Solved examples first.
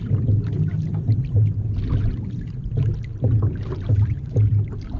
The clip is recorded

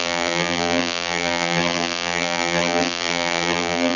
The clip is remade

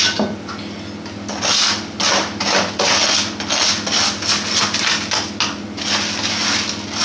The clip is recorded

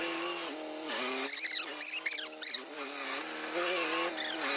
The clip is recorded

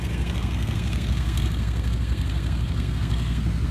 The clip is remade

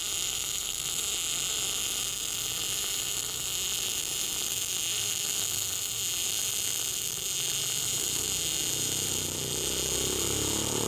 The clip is recorded